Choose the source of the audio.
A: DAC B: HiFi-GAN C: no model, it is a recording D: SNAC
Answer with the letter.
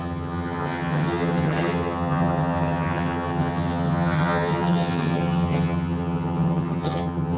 B